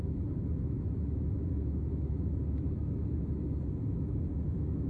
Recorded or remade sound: remade